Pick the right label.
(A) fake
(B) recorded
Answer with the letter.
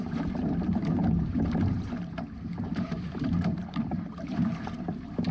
A